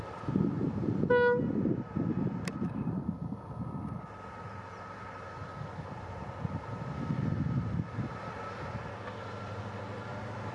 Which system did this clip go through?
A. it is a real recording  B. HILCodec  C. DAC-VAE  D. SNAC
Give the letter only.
A